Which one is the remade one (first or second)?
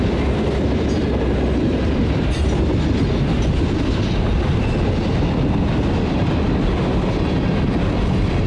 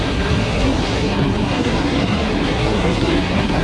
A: second